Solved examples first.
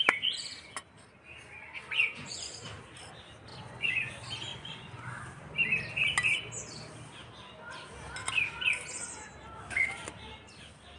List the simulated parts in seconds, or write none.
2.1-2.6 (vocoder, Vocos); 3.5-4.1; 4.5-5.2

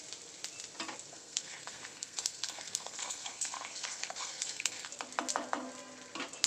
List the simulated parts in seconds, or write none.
1.1-4.9 (codec, SNAC)

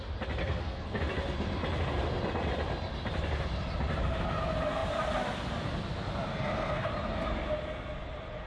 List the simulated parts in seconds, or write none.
0.4-1.0 (codec, SNAC); 6.3-6.9

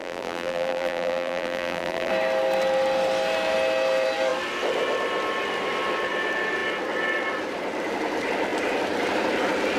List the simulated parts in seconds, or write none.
0.0-2.1 (vocoder, BigVGAN v2)